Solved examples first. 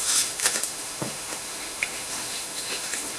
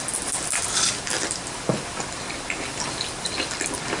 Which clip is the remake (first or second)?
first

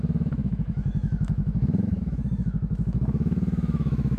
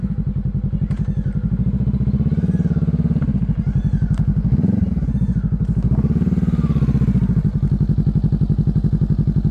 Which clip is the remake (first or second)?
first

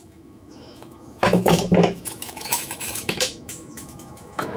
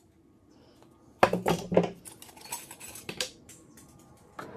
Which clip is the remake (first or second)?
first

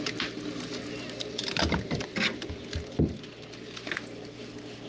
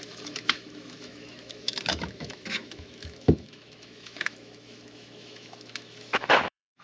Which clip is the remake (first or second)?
second